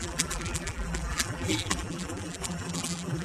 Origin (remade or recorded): remade